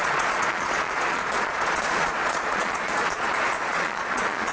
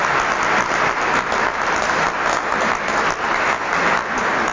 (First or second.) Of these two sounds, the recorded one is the second